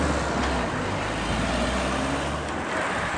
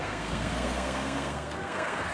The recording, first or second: first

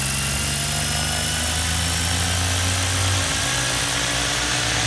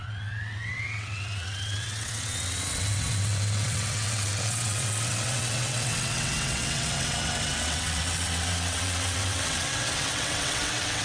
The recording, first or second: first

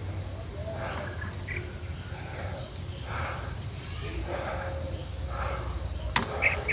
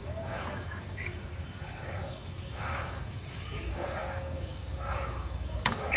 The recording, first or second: first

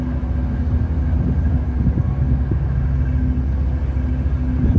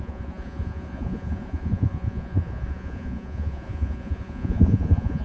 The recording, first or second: first